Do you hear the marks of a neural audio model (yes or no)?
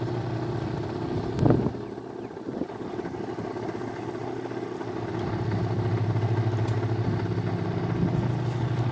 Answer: no